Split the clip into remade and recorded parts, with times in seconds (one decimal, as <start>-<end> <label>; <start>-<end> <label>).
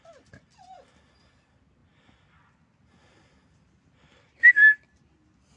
0.0-5.6 recorded